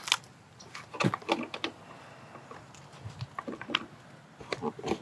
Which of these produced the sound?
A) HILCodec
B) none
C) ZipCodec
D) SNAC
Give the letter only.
B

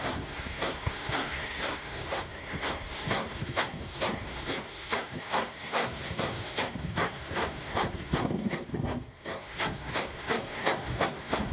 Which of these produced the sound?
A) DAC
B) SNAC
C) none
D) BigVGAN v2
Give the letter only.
B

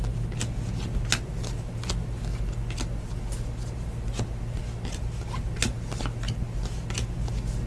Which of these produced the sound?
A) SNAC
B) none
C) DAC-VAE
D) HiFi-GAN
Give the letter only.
B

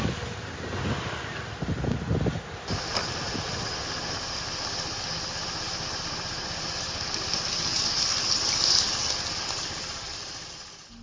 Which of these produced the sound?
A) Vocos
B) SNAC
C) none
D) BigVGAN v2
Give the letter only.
C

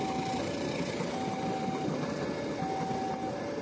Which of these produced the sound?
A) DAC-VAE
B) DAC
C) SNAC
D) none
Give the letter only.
D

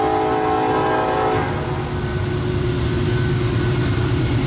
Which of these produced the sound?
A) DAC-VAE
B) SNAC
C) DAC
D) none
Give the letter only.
D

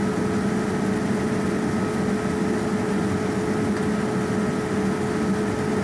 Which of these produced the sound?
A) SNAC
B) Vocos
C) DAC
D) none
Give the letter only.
D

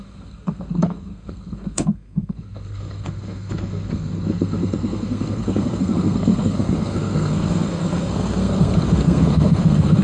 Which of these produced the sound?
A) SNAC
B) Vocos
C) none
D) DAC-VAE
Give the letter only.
A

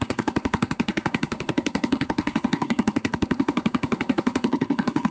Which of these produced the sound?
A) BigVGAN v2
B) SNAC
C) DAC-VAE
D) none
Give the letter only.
B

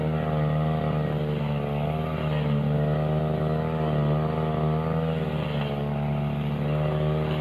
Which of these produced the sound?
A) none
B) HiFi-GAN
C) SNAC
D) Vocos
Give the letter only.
A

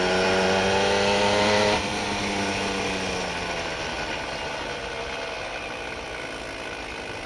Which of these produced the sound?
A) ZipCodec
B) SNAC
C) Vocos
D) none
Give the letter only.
D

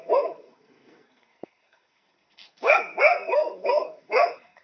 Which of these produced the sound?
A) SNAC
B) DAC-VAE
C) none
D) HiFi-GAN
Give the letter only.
A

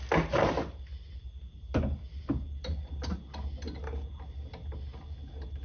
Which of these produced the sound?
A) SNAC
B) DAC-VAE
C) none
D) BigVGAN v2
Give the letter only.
C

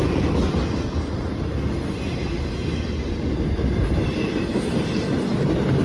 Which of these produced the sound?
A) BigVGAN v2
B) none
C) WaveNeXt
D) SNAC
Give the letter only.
B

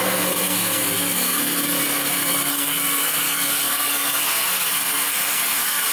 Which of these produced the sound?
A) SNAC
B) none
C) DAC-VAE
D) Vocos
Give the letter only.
A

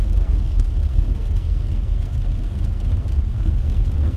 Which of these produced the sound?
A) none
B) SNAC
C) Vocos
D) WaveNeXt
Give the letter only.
B